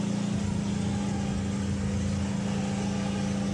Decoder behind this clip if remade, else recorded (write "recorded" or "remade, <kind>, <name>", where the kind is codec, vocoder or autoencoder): recorded